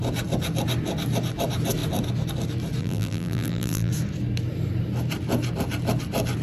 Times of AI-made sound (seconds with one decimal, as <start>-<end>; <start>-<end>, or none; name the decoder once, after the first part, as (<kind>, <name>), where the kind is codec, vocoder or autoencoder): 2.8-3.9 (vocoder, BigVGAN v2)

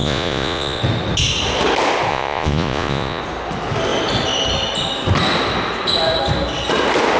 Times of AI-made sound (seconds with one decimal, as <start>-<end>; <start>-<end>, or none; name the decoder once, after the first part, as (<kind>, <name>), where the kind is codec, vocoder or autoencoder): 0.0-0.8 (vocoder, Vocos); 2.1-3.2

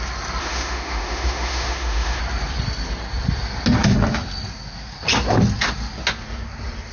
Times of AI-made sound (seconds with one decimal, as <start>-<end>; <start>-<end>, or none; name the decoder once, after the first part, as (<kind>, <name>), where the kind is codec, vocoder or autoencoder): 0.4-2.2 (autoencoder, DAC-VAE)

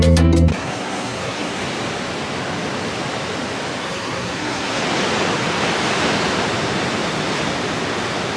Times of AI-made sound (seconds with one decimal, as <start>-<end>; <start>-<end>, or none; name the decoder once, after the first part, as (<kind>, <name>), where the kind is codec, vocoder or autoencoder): 0.5-1.6 (codec, SNAC); 3.8-4.8

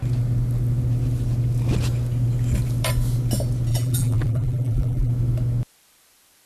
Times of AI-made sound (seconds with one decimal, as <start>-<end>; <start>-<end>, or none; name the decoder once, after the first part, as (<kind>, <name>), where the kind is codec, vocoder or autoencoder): 3.7-5.1 (vocoder, BigVGAN v2)